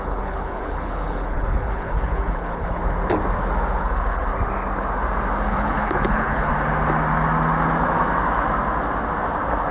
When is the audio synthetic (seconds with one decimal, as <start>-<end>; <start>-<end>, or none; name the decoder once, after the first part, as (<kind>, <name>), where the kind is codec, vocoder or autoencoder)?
0.0-2.8 (codec, HILCodec); 3.8-4.3; 5.5-6.5